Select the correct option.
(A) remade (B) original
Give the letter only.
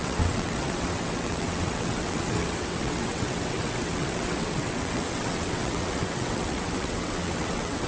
A